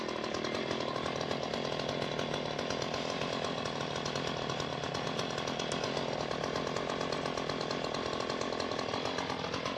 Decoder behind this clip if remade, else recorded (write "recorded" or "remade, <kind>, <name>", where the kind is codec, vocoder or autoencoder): recorded